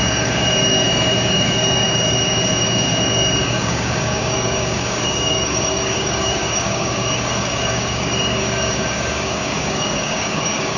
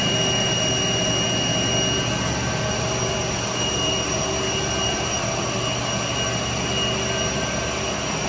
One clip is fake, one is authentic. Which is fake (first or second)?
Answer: first